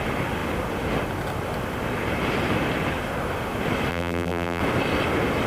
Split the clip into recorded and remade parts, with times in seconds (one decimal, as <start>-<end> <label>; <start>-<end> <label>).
0.0-3.9 recorded; 3.9-4.6 remade; 4.6-5.5 recorded